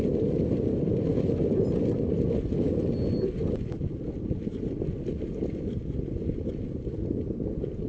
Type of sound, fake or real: real